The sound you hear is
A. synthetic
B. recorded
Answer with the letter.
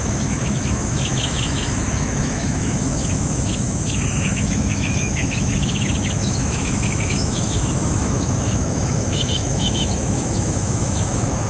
A